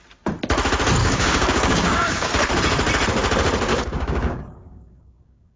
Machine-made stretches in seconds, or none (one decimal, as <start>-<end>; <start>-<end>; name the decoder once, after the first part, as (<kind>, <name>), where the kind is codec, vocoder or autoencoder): 1.0-2.3 (codec, DAC); 3.7-5.6